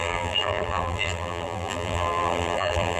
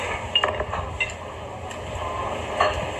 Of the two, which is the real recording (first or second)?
second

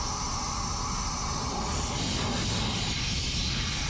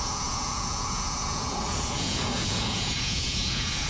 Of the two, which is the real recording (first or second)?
first